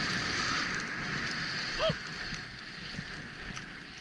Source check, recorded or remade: recorded